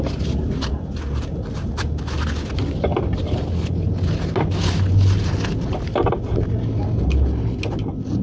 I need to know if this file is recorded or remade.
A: recorded